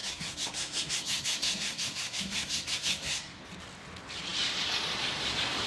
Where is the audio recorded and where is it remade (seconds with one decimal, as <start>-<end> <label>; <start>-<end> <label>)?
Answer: 0.0-3.4 remade; 3.4-5.7 recorded